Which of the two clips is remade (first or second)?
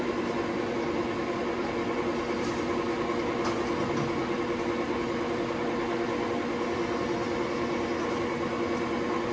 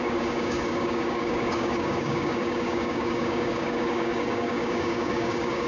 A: second